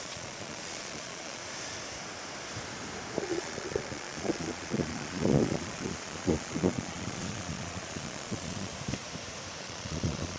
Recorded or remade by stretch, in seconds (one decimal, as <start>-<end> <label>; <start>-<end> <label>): 0.0-1.4 remade; 1.4-3.2 recorded; 3.2-8.7 remade; 8.7-9.6 recorded; 9.6-10.4 remade